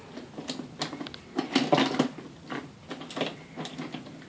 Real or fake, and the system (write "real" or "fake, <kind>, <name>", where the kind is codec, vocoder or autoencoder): real